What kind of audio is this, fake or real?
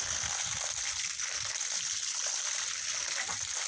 real